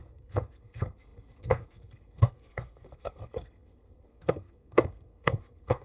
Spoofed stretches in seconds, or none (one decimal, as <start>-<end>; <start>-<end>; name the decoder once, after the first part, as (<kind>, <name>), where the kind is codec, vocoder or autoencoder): 0.0-5.8 (codec, SNAC)